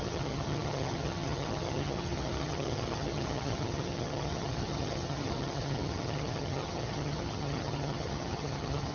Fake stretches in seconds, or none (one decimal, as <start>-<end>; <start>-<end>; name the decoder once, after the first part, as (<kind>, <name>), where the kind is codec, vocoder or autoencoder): 0.0-8.9 (vocoder, HiFi-GAN)